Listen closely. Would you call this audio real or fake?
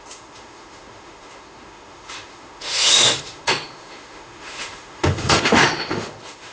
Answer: fake